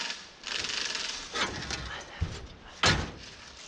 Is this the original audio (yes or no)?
yes